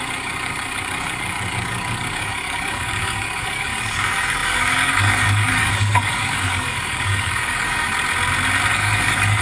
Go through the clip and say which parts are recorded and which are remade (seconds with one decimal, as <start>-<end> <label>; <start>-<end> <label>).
0.0-7.9 remade; 7.9-8.7 recorded; 8.7-9.4 remade